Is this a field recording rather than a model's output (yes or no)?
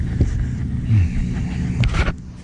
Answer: yes